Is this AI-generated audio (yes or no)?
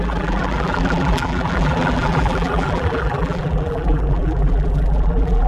yes